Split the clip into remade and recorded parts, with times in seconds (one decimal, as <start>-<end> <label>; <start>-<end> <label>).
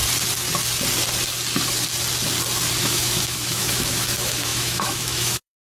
0.0-2.8 recorded; 2.8-5.6 remade